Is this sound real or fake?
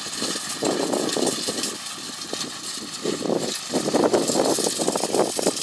real